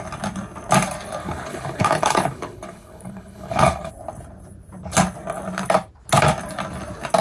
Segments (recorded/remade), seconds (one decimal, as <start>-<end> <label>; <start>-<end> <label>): 0.0-1.2 recorded; 1.2-3.9 remade; 3.9-7.2 recorded